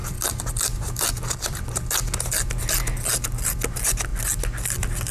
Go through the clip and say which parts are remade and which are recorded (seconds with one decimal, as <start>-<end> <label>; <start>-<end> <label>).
0.0-1.6 remade; 1.6-5.1 recorded